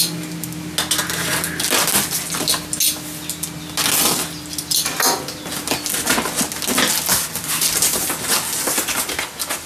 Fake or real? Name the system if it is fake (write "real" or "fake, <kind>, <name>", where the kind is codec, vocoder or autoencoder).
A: real